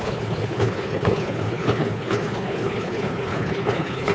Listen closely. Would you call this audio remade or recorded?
remade